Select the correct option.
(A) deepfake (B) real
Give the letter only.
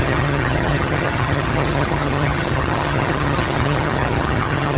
A